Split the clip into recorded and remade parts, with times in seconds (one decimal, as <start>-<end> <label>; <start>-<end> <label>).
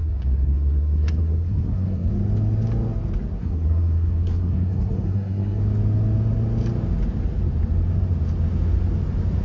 0.0-2.1 remade; 2.1-3.4 recorded; 3.4-5.6 remade; 5.6-9.4 recorded